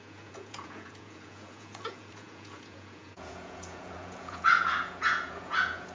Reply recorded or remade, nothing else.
remade